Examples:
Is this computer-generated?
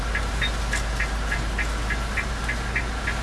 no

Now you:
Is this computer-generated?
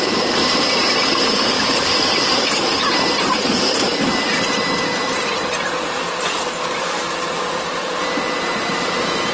yes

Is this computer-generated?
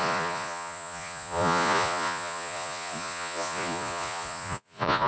yes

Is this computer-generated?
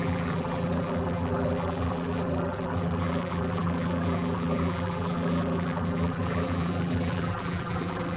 yes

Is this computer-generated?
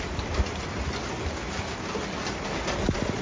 no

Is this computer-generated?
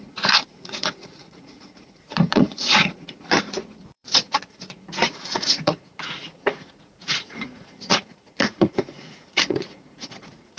yes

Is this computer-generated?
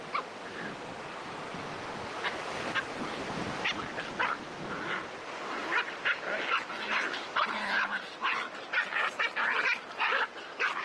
no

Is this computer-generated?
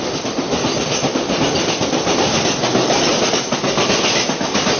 no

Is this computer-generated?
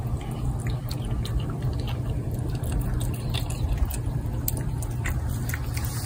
no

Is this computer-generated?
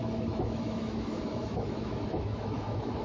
yes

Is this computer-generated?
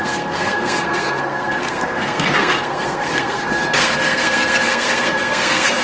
yes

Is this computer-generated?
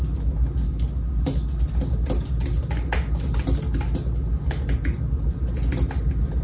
no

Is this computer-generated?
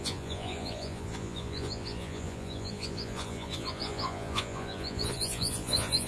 yes